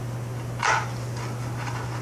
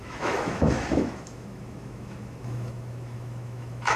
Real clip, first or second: first